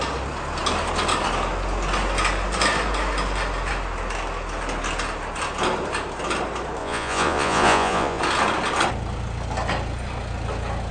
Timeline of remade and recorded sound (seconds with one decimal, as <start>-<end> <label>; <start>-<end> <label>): 0.0-6.8 recorded; 6.8-8.2 remade; 8.2-10.9 recorded